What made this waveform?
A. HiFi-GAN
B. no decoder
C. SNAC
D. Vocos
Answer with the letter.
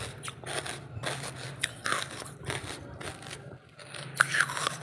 B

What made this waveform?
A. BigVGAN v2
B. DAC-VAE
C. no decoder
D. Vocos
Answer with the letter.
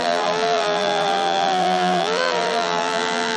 A